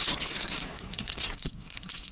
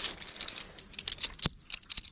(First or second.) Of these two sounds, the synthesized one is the first